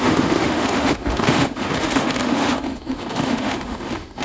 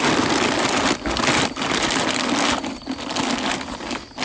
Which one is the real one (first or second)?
second